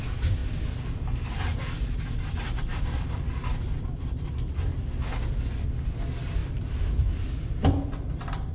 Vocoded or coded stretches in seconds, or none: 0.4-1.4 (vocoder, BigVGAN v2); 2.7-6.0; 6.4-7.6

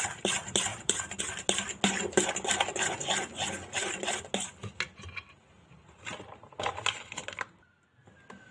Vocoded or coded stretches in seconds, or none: 0.7-1.2 (vocoder, BigVGAN v2); 3.6-4.1; 7.2-8.1

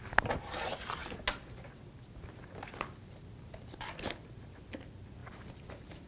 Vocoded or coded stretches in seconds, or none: 5.2-6.1 (vocoder, BigVGAN v2)

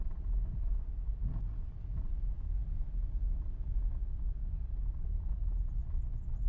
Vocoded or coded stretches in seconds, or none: 0.0-1.2 (vocoder, BigVGAN v2); 2.2-2.6

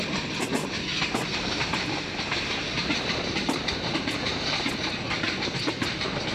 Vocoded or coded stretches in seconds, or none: 0.9-4.7 (vocoder, BigVGAN v2)

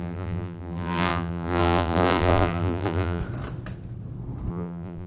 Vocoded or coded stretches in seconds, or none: 0.0-3.2 (vocoder, BigVGAN v2); 4.5-5.1

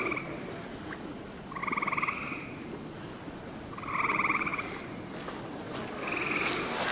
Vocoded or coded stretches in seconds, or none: 0.0-4.5 (vocoder, BigVGAN v2); 5.4-6.9

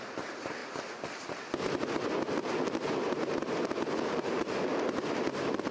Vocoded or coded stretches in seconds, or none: 0.0-0.6 (vocoder, BigVGAN v2); 4.0-4.7; 5.3-5.7